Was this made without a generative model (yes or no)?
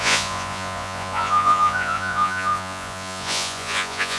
no